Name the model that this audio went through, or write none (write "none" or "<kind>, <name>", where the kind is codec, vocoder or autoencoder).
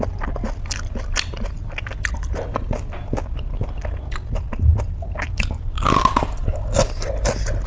none